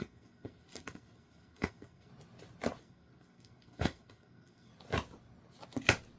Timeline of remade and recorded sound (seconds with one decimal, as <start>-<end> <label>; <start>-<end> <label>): 0.0-2.1 remade; 2.1-2.8 recorded; 2.8-4.7 remade; 4.7-6.2 recorded